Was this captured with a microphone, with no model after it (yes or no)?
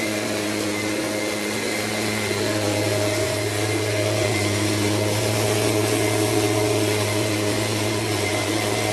no